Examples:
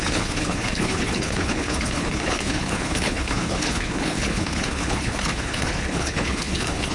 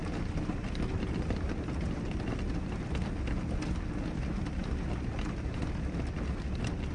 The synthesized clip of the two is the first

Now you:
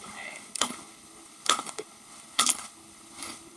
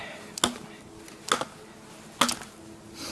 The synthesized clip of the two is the first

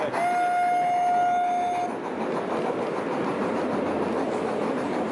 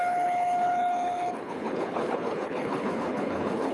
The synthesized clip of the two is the second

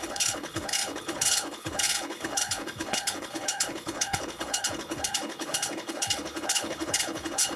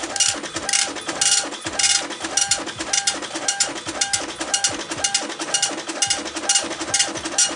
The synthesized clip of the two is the first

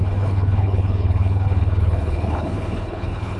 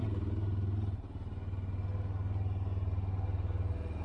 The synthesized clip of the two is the first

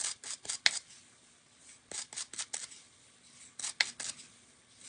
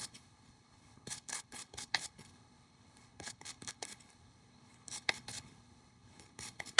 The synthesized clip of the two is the second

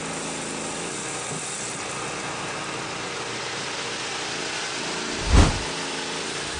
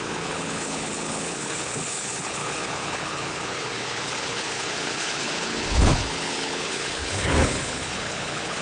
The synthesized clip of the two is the second